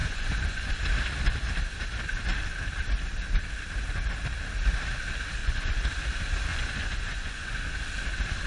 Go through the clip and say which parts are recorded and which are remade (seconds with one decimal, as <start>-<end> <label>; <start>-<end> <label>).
0.0-0.7 remade; 0.7-5.4 recorded; 5.4-5.9 remade; 5.9-6.5 recorded; 6.5-7.6 remade; 7.6-8.5 recorded